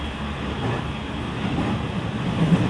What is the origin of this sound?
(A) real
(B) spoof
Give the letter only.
A